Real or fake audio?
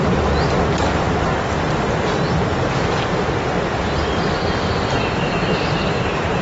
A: real